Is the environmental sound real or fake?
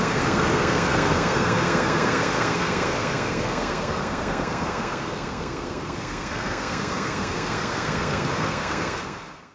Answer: fake